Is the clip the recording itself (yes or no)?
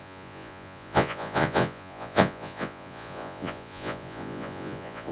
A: no